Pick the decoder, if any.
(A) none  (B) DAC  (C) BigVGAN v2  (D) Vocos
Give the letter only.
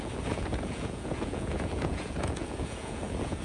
D